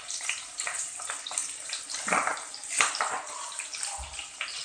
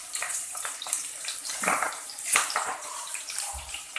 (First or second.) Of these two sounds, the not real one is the second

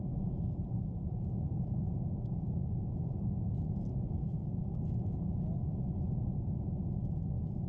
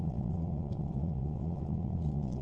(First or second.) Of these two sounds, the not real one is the second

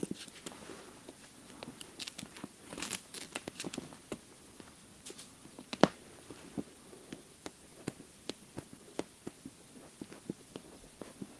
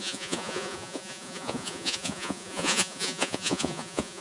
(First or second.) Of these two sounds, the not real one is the second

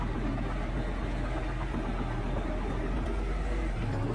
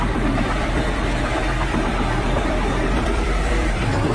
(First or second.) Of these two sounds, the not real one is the second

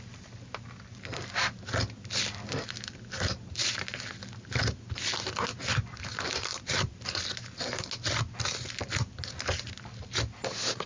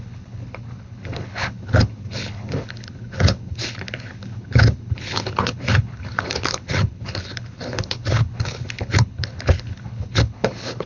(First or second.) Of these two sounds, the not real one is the second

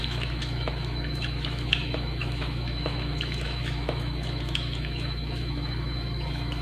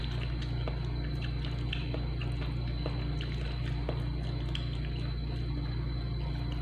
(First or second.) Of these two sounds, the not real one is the first